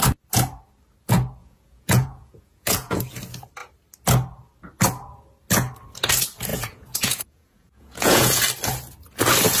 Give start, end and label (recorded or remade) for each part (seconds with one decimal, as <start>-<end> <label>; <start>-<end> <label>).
0.0-1.4 recorded; 1.4-3.0 remade; 3.0-6.5 recorded; 6.5-8.4 remade; 8.4-9.6 recorded

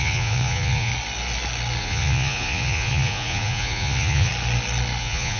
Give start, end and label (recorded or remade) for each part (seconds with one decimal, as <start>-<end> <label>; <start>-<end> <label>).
0.0-0.9 remade; 0.9-1.8 recorded; 1.8-4.3 remade; 4.3-5.0 recorded; 5.0-5.4 remade

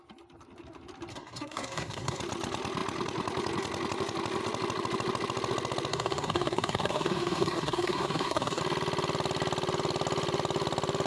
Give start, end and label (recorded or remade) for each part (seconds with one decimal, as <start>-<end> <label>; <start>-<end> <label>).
0.0-1.1 recorded; 1.1-2.2 remade; 2.2-5.9 recorded; 5.9-8.6 remade; 8.6-11.1 recorded

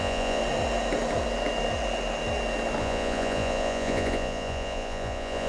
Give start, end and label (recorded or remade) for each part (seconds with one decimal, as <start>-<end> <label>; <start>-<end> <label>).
0.0-0.4 remade; 0.4-2.8 recorded; 2.8-5.5 remade